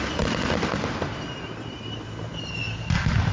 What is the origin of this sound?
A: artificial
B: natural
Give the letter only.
B